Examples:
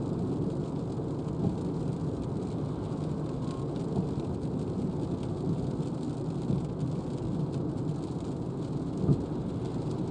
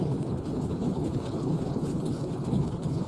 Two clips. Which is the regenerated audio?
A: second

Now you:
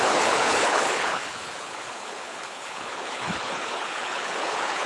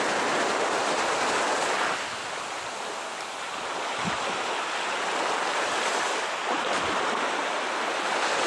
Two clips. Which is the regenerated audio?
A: first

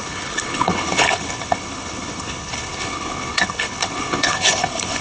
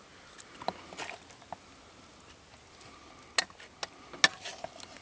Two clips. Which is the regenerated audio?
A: first